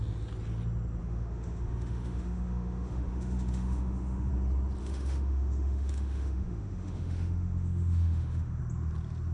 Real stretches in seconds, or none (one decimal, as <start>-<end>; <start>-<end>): 0.0-1.0; 4.3-4.8; 8.6-9.3